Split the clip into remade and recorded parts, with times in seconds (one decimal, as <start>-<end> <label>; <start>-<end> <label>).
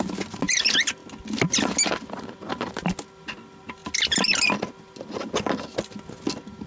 0.0-6.7 recorded